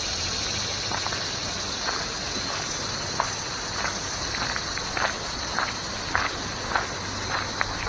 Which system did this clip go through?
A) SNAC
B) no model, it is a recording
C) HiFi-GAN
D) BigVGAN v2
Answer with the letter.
B